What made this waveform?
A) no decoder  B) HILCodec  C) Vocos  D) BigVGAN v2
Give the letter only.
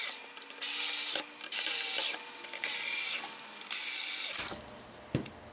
A